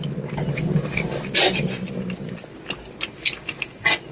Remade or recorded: recorded